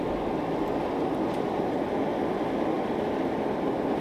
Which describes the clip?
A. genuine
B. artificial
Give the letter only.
A